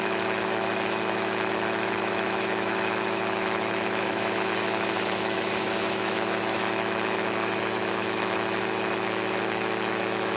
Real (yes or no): no